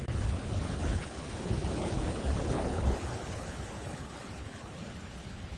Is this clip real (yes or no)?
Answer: no